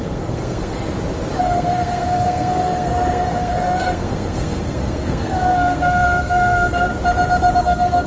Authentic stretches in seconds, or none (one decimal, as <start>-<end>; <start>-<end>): 0.8-1.4; 6.9-7.6